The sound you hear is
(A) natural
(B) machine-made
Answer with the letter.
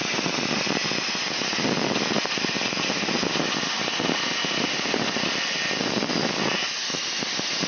A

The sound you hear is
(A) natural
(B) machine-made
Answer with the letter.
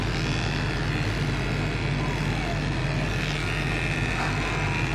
A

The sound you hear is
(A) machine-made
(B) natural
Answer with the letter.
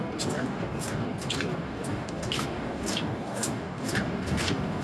A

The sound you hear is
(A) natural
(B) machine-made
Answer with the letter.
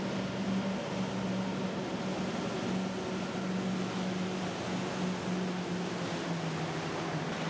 A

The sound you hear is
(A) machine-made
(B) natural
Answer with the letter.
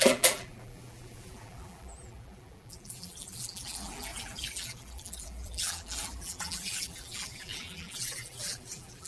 A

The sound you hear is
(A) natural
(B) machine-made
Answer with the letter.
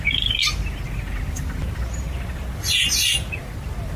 A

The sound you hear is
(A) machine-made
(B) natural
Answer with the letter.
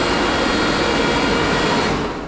B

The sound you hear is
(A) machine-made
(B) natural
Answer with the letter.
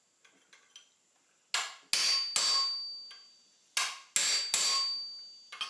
B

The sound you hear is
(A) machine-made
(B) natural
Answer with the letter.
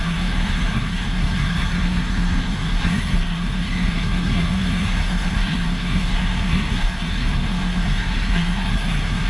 A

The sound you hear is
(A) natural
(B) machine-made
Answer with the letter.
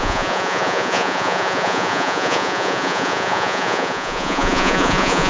B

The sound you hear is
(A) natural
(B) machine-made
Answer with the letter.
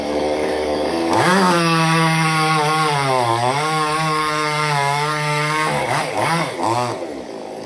B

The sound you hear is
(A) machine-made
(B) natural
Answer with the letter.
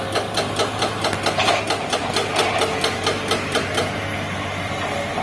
B